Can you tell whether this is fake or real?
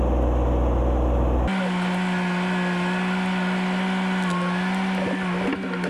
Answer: real